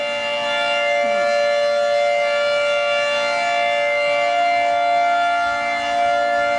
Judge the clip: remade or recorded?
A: recorded